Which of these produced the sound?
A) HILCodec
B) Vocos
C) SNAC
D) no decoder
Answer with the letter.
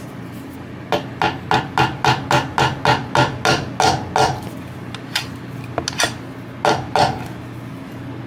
D